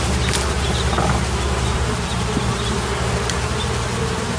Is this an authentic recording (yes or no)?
yes